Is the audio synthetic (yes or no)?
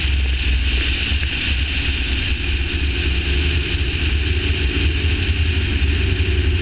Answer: no